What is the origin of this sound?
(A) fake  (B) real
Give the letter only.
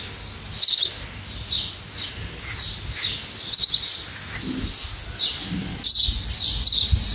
B